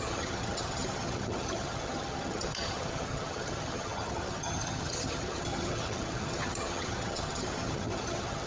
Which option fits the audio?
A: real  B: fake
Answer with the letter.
B